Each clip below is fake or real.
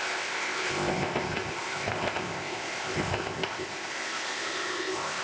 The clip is fake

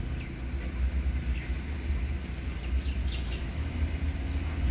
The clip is real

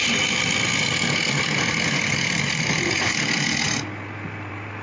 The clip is real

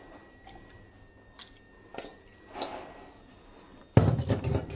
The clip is real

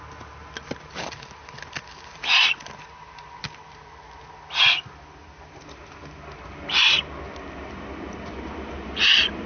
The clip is real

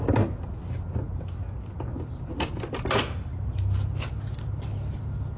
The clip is real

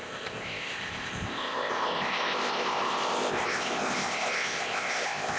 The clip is fake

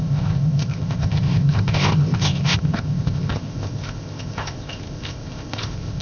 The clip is fake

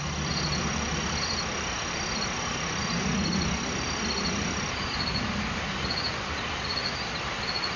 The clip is real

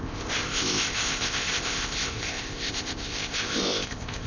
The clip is fake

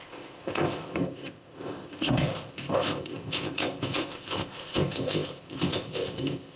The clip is fake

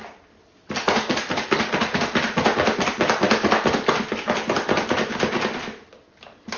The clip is real